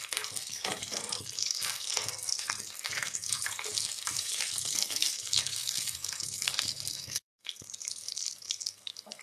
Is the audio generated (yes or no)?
yes